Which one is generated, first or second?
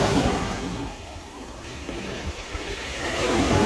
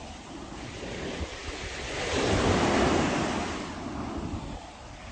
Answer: first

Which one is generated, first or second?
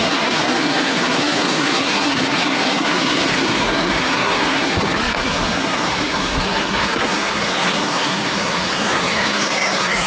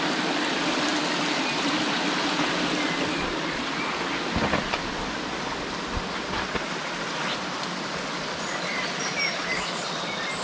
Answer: first